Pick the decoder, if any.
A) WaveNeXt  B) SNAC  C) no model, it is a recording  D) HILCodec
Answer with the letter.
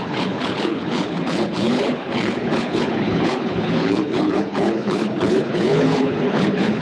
D